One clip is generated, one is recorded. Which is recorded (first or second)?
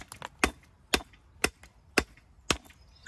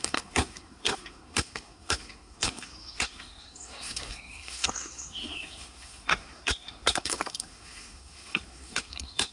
first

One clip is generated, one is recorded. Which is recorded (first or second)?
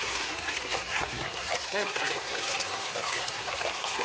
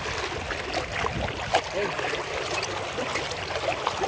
second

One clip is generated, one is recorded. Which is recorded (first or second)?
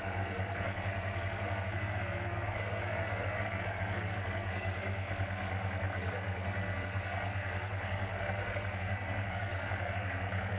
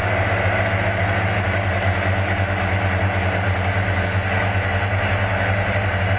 second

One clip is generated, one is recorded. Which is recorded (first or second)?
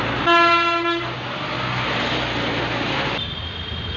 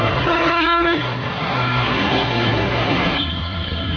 first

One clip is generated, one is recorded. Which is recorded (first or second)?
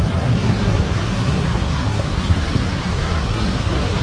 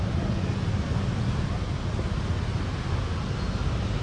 second